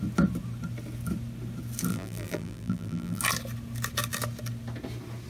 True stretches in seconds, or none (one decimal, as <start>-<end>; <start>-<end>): 0.0-1.9; 3.2-5.3